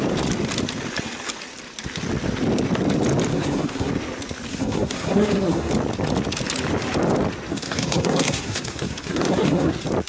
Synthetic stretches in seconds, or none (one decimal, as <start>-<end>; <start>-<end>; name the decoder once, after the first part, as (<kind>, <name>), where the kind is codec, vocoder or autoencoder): 3.3-3.9 (codec, SNAC); 4.5-5.7; 7.5-9.7

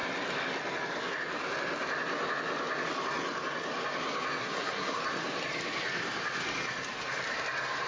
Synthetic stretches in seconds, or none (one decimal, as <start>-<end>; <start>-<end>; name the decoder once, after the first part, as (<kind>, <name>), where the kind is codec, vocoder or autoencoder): 4.4-5.0 (codec, SNAC)

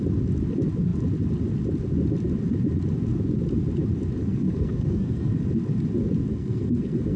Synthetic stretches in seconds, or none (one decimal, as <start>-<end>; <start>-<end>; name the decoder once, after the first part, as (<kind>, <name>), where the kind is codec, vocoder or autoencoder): 4.2-5.3 (codec, SNAC); 6.3-7.2

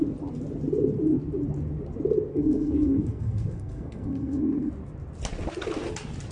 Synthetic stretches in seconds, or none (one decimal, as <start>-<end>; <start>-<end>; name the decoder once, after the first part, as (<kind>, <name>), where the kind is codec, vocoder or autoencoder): 2.3-4.7 (codec, SNAC)

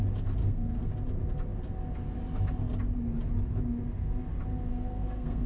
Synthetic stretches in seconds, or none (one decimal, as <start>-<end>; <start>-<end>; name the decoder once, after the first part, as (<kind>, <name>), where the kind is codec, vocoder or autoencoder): 0.4-0.9 (codec, SNAC); 4.7-5.5

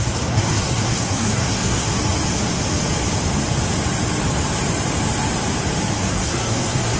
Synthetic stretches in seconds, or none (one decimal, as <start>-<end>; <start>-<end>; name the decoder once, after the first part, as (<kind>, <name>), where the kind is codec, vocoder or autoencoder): 0.0-1.9 (codec, SNAC); 6.1-7.0

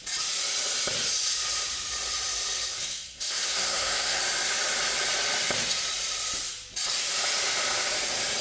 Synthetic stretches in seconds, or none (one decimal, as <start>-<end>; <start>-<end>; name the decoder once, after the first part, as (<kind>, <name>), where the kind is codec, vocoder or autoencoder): 2.7-4.2 (codec, SNAC)